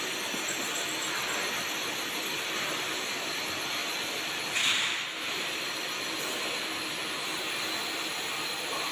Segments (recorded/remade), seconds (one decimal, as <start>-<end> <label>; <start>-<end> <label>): 0.0-3.8 recorded; 3.8-4.4 remade; 4.4-8.9 recorded